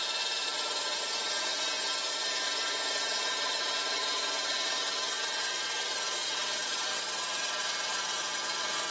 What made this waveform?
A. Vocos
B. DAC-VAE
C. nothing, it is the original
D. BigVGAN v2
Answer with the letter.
C